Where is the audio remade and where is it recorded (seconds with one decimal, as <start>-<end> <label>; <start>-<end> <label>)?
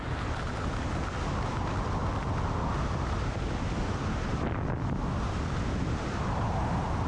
0.0-7.1 recorded